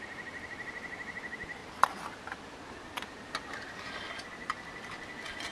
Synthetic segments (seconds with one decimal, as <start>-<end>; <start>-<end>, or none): none